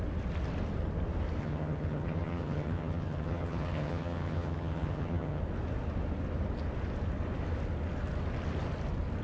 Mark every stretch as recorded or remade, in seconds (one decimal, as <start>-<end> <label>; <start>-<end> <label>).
0.0-1.4 recorded; 1.4-5.4 remade; 5.4-9.2 recorded